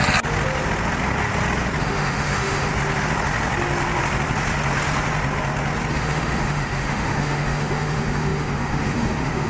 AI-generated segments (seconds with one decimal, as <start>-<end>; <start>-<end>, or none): 1.8-2.7; 5.9-9.5